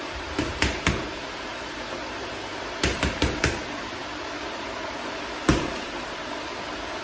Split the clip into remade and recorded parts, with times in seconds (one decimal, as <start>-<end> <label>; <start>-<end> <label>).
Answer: 0.0-7.0 remade